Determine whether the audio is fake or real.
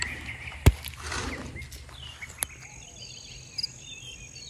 real